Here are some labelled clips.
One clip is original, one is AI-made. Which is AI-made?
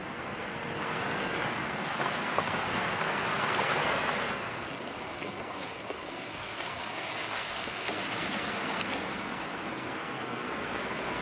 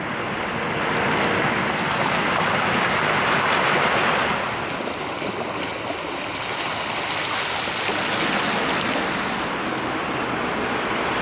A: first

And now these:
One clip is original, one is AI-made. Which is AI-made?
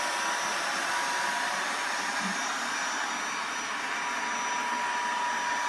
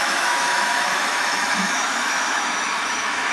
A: second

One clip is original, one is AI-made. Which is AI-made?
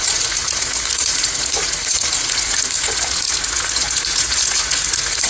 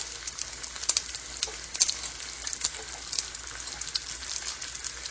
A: first